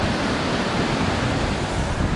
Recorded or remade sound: recorded